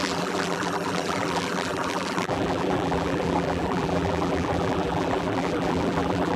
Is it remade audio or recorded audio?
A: remade